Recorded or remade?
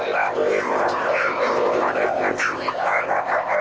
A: remade